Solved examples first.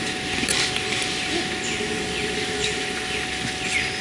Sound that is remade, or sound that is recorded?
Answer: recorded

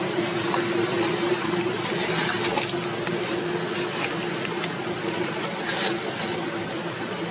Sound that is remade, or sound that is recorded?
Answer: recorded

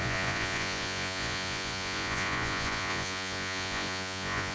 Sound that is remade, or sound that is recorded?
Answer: remade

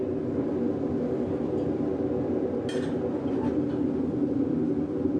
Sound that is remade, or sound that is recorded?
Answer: recorded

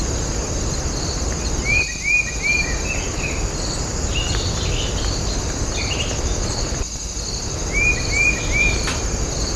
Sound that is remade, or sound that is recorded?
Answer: recorded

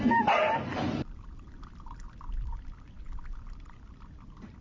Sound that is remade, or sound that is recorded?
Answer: recorded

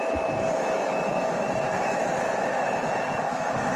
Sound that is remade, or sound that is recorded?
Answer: remade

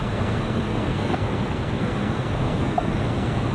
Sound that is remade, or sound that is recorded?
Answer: remade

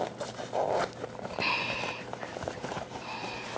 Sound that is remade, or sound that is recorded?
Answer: remade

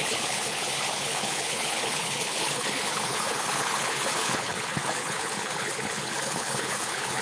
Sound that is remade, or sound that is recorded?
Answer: remade